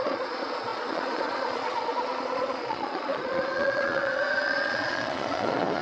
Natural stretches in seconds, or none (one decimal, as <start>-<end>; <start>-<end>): none